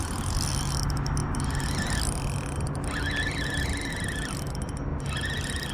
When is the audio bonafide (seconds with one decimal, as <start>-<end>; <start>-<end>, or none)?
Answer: 0.0-5.7

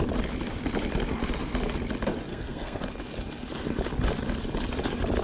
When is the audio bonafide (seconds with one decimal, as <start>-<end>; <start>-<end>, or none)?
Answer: 0.0-2.3; 2.8-5.2

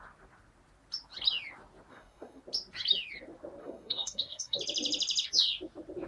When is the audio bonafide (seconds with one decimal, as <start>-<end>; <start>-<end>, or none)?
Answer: 0.0-1.9; 2.4-3.6; 4.6-6.1

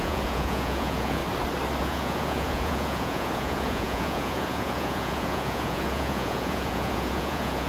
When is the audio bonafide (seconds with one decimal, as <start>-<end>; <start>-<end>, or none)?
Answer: 1.2-1.8

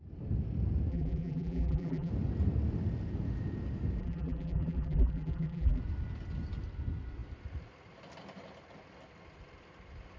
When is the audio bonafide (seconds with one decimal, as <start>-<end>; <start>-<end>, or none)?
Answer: 0.0-0.9; 2.1-4.0; 5.8-10.2

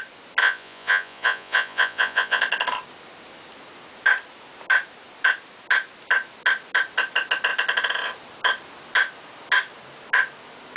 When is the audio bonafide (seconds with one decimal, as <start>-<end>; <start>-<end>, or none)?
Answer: 0.0-0.4; 2.4-10.8

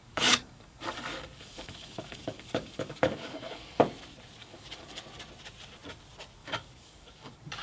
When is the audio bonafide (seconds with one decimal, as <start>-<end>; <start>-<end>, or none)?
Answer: 3.8-4.4; 5.0-6.4

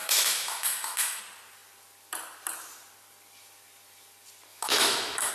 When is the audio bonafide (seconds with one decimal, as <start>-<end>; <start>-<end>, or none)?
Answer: 1.2-4.5